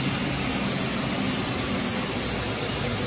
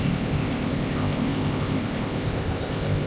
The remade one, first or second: second